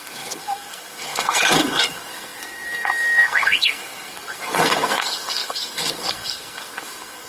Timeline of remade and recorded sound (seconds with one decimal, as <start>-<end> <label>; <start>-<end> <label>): 0.0-7.3 remade